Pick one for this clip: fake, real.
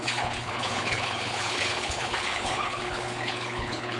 fake